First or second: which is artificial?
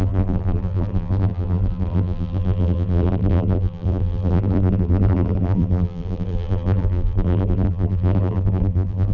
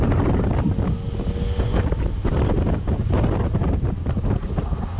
first